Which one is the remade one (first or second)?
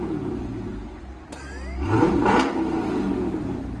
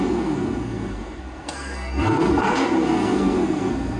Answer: second